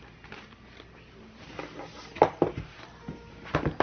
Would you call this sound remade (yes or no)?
no